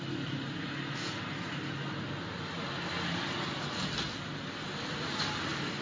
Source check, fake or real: real